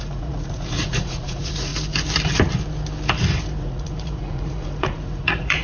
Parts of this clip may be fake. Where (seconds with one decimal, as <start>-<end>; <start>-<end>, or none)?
0.0-1.7; 3.6-5.6